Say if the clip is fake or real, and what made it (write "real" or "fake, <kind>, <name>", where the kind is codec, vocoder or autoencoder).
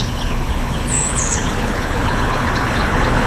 fake, codec, HILCodec